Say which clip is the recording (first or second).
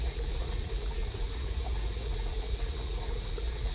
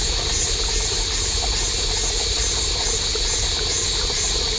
second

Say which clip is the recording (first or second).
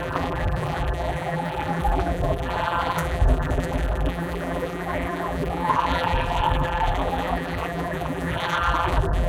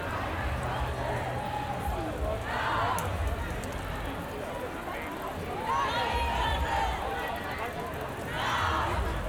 second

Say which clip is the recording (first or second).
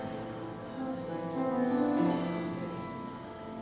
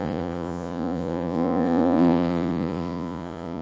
first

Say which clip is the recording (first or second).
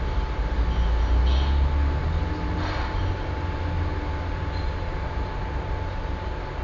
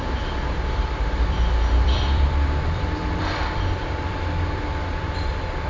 first